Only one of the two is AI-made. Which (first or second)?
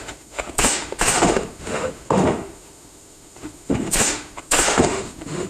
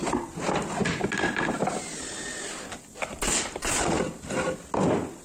first